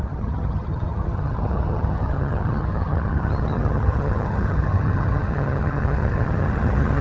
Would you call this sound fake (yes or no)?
yes